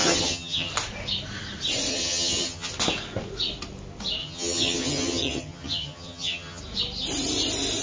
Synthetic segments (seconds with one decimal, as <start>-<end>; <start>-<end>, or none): 0.0-0.7; 1.9-2.7; 4.2-6.6